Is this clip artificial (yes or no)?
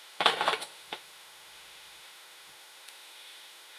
yes